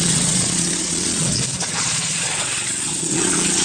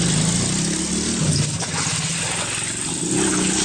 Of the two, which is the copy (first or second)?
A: first